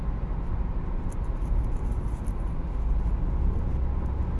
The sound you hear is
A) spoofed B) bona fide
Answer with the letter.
B